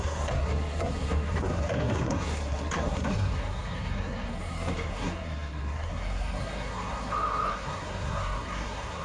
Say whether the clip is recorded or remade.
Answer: remade